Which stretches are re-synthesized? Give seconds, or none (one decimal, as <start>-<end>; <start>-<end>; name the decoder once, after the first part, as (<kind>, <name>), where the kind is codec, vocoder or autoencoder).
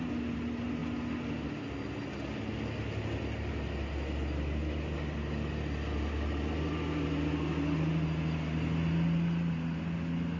none